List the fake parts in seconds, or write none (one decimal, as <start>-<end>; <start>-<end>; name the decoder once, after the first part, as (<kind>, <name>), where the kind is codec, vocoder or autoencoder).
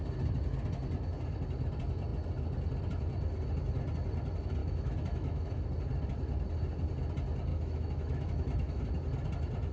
4.6-5.5 (autoencoder, DAC-VAE); 7.5-8.8